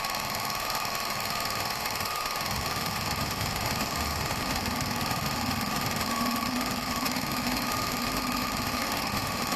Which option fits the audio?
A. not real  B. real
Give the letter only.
A